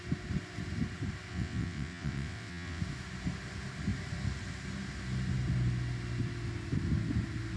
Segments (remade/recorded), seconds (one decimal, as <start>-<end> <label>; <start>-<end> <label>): 0.0-1.3 recorded; 1.3-2.8 remade; 2.8-7.6 recorded